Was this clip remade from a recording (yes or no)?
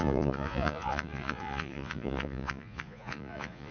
yes